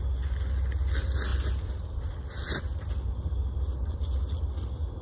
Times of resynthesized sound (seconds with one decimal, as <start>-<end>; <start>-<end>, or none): none